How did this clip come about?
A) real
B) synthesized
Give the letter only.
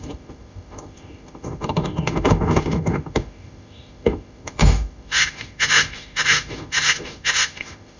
B